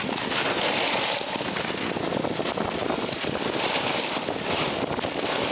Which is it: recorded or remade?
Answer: recorded